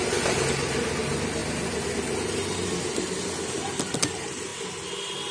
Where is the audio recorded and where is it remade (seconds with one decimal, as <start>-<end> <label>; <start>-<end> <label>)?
0.0-5.3 recorded